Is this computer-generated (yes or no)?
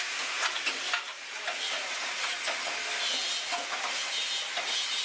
no